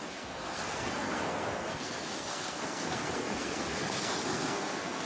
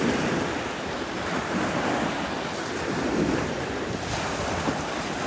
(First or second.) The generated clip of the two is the first